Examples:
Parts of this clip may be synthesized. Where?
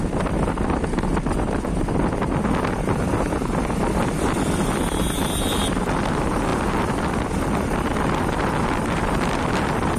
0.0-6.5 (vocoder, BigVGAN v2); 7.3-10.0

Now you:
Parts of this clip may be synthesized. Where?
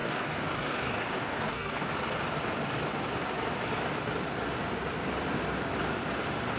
0.0-1.9 (codec, DAC)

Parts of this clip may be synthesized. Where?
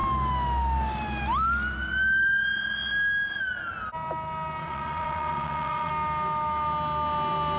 4.6-5.9 (vocoder, WaveNeXt)